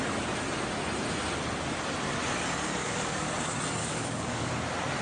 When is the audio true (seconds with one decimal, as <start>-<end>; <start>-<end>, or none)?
0.0-2.8; 3.3-3.8; 4.5-5.0